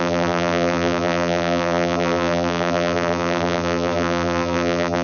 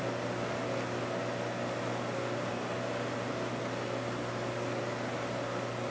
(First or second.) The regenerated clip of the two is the first